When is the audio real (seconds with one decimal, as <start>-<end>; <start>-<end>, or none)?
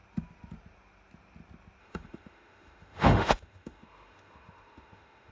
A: 0.0-1.8